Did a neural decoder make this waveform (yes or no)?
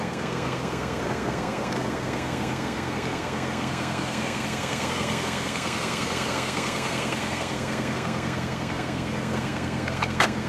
yes